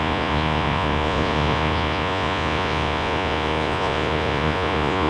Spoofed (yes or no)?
yes